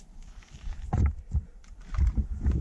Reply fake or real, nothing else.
fake